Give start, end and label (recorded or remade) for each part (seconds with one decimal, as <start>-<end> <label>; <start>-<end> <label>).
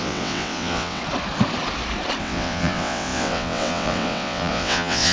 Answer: 0.0-1.0 remade; 1.0-2.2 recorded; 2.2-5.1 remade